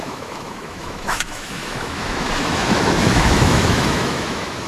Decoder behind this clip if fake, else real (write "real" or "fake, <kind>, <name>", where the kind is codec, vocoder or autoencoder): fake, autoencoder, DAC-VAE